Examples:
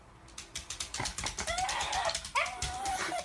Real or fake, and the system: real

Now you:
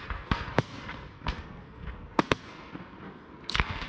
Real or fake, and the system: fake, codec, SNAC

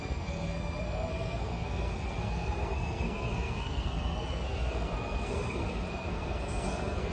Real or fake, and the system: fake, codec, SNAC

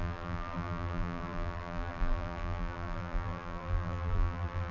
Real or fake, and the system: fake, vocoder, BigVGAN v2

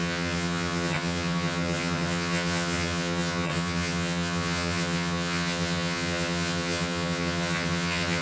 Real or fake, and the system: fake, vocoder, HiFi-GAN